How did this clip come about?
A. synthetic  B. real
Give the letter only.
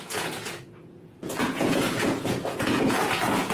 A